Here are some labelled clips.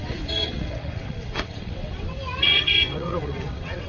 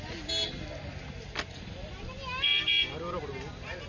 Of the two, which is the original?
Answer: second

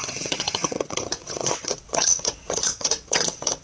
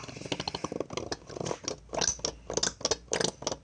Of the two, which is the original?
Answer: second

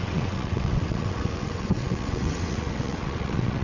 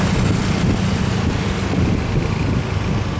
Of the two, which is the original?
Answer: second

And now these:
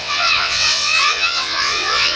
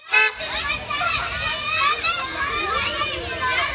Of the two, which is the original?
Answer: second